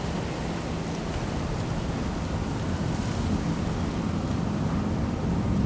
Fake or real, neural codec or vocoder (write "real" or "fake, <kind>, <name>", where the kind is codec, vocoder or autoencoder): real